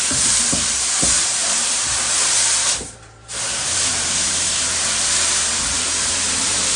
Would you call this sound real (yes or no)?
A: no